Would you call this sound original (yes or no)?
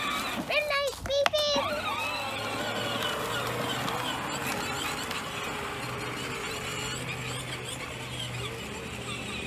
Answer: yes